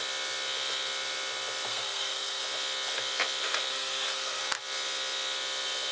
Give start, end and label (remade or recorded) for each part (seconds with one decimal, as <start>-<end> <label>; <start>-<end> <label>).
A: 0.0-1.7 recorded; 1.7-2.4 remade; 2.4-3.7 recorded; 3.7-4.4 remade; 4.4-5.9 recorded